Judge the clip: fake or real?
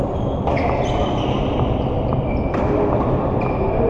real